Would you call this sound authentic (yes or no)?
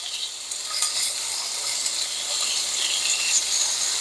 yes